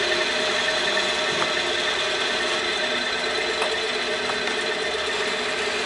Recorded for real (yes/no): yes